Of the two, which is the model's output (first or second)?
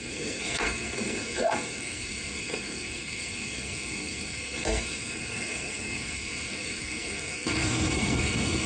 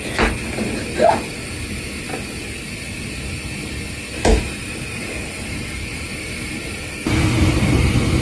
first